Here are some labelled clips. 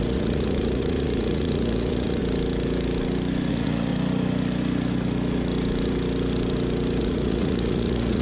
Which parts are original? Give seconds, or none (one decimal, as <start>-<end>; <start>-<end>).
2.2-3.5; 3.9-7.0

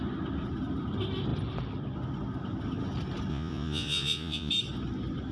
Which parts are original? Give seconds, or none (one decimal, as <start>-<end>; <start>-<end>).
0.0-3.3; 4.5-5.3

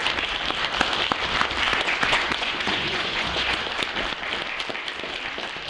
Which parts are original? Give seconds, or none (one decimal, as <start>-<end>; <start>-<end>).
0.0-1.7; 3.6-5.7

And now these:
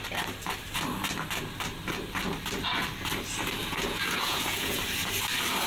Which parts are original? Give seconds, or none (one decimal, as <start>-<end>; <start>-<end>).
0.0-3.6; 4.8-5.7

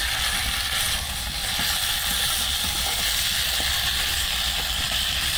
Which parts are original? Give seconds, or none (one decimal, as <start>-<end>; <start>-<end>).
0.0-5.4

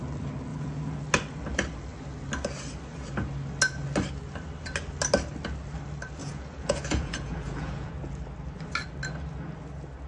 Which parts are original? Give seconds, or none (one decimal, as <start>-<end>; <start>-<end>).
0.0-0.5; 1.0-6.2; 7.9-10.1

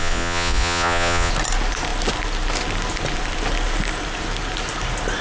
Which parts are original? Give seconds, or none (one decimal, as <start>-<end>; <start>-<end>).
1.3-5.2

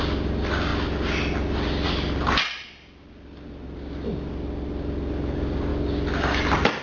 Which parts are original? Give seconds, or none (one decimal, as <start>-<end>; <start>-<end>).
0.0-6.8